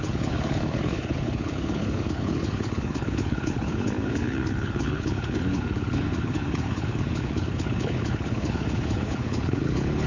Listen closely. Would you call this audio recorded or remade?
remade